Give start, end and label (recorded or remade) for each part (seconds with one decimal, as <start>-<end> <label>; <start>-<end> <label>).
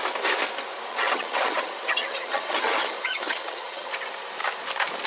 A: 0.0-0.9 recorded; 0.9-3.9 remade; 3.9-5.1 recorded